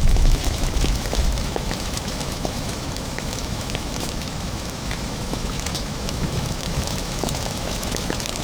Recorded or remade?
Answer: remade